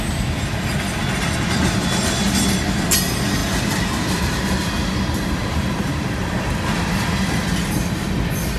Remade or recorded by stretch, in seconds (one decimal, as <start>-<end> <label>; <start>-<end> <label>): 0.0-8.6 recorded